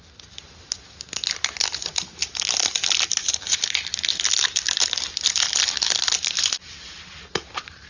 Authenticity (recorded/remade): recorded